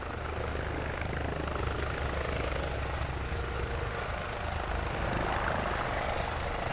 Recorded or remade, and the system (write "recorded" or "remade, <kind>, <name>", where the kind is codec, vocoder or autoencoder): recorded